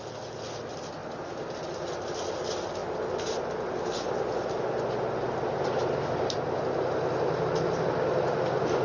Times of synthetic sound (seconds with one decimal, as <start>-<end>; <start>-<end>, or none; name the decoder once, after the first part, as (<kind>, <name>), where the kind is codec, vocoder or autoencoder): none